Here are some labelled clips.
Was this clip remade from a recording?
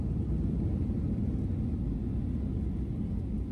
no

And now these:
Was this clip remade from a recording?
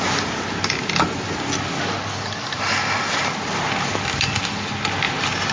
no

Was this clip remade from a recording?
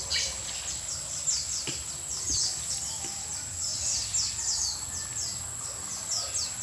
no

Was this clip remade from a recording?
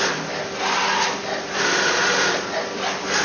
no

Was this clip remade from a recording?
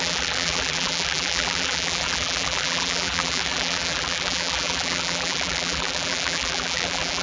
yes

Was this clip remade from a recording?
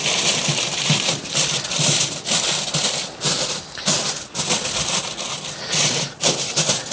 no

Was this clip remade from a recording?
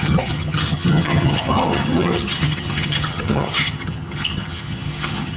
yes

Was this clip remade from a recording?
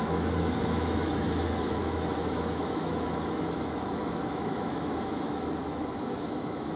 yes